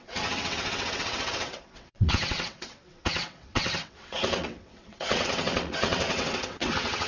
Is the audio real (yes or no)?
no